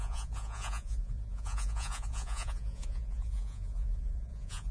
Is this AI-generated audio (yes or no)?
yes